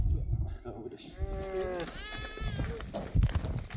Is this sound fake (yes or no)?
no